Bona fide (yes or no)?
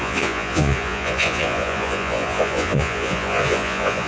no